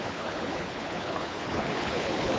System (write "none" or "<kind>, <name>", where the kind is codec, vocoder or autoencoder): codec, HILCodec